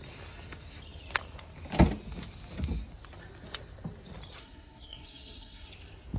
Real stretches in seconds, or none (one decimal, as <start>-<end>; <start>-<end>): 0.0-4.4; 5.7-6.2